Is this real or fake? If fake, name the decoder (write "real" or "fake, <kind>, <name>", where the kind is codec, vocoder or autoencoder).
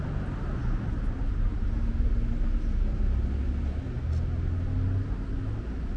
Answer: real